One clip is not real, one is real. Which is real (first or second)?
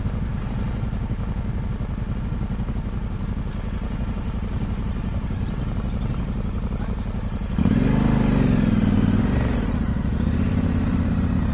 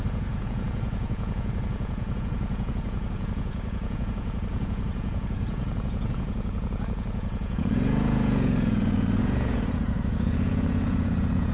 first